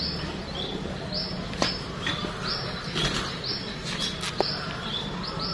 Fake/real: real